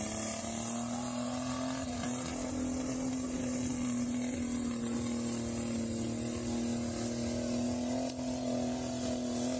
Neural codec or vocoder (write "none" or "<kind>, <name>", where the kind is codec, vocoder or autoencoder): none